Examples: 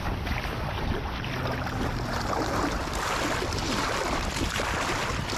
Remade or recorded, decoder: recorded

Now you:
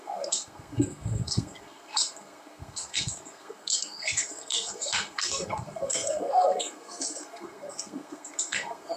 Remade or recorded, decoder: remade, codec, SNAC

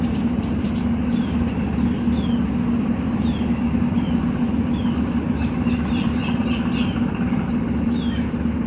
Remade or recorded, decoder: recorded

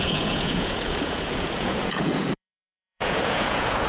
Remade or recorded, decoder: remade, vocoder, Vocos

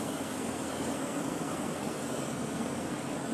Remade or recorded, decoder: remade, codec, SNAC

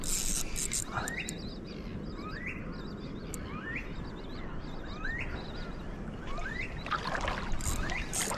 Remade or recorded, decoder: recorded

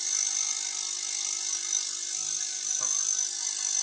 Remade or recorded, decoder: recorded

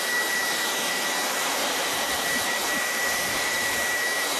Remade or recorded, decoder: remade, vocoder, BigVGAN v2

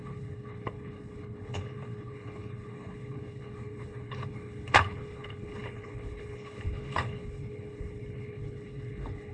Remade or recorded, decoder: remade, codec, HILCodec